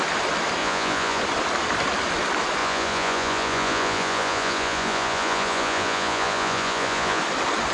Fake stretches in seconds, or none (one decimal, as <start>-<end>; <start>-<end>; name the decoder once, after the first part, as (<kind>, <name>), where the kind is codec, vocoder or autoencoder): 0.6-1.2 (vocoder, Vocos); 2.6-7.2